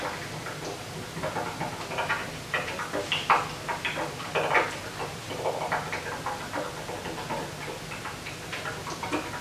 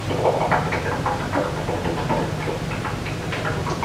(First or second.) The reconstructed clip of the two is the second